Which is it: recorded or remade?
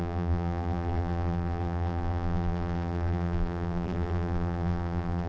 remade